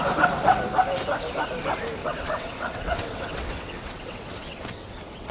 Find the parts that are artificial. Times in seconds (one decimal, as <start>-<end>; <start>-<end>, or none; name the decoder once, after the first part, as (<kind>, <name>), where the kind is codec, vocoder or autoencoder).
2.0-5.3 (vocoder, WaveNeXt)